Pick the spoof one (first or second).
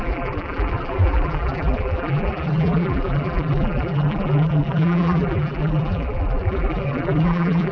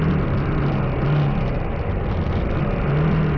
first